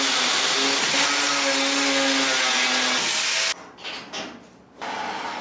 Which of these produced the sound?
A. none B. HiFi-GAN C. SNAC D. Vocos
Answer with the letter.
A